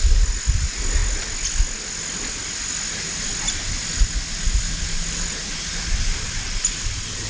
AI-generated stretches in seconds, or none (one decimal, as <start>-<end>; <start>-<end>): none